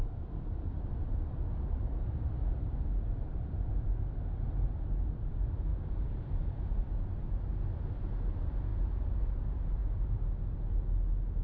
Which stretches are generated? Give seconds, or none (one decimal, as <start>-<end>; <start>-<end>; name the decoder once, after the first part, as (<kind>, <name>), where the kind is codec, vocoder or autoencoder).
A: none